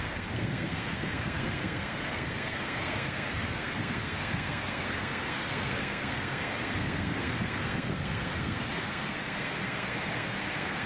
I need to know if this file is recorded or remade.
remade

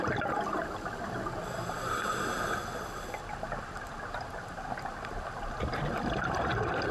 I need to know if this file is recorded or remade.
recorded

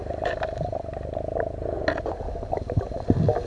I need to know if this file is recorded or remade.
recorded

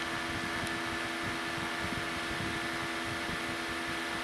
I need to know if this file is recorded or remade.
recorded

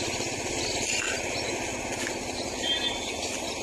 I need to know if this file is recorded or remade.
recorded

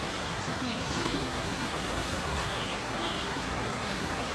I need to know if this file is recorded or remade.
remade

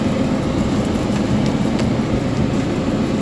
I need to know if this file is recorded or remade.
recorded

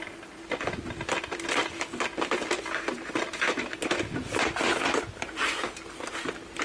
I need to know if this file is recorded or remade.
recorded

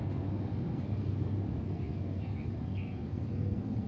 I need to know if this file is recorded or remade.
remade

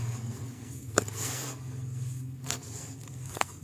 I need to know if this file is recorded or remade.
remade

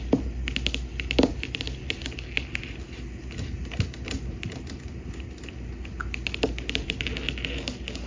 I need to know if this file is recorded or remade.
recorded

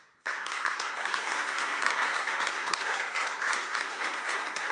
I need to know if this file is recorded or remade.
remade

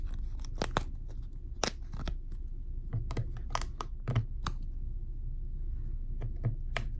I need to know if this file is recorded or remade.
recorded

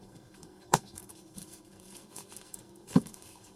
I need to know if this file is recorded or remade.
remade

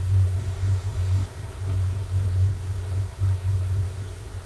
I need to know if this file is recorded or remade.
remade